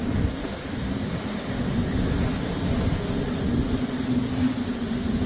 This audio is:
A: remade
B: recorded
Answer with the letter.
B